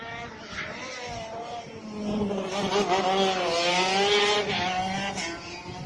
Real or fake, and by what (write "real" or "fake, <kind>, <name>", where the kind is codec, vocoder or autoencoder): real